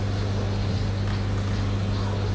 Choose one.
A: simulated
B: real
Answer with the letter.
B